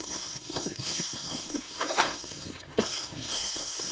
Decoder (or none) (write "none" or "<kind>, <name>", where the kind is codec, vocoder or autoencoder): codec, SNAC